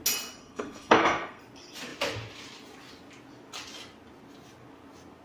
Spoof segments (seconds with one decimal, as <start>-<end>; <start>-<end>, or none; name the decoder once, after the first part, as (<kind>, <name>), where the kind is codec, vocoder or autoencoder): 0.4-1.4 (codec, SNAC)